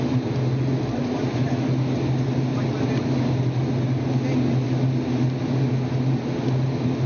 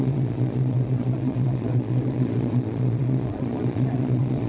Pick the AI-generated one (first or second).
second